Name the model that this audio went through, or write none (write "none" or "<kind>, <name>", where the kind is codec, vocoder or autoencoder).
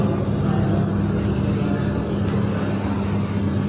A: none